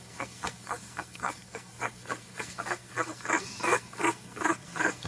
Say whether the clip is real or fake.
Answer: fake